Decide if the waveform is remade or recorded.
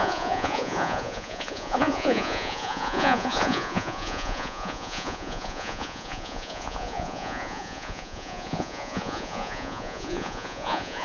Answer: remade